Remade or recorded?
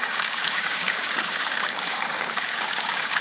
remade